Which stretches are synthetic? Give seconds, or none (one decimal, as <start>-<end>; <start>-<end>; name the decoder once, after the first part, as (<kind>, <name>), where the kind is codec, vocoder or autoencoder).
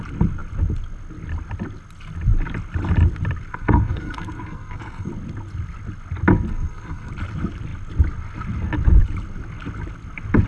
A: 3.5-5.1 (codec, SNAC); 6.5-7.1